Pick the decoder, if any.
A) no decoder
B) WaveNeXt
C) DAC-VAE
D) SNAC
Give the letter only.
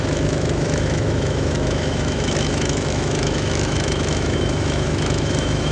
C